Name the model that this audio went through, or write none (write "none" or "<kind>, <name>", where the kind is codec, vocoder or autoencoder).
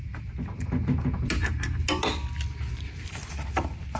none